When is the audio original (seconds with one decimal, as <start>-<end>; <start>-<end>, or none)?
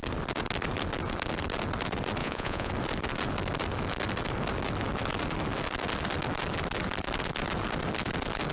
0.0-2.2; 2.7-8.5